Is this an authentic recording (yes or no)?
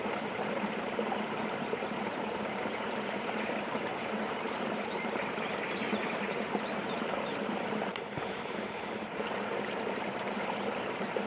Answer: no